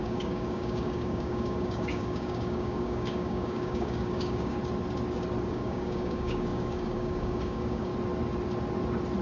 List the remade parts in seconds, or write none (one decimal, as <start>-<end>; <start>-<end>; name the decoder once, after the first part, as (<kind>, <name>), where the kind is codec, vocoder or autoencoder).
0.0-4.6 (codec, DAC); 5.5-7.9